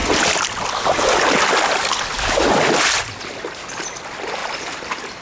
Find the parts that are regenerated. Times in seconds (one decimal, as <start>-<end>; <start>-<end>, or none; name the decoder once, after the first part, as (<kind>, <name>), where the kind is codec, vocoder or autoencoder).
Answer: none

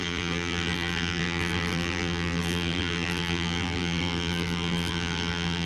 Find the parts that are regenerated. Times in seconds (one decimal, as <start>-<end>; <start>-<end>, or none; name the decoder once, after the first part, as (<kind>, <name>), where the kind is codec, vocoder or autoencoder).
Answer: 0.0-5.7 (vocoder, BigVGAN v2)

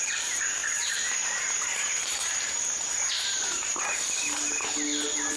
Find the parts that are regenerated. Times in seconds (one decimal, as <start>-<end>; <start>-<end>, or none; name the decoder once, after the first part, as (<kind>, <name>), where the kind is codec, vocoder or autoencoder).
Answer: 0.6-3.8 (vocoder, BigVGAN v2)

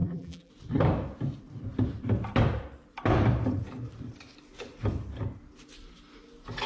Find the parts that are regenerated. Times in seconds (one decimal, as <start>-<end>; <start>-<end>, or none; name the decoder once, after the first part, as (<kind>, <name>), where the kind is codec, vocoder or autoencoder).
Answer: 0.0-0.5 (vocoder, BigVGAN v2)